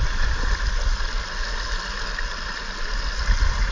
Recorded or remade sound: recorded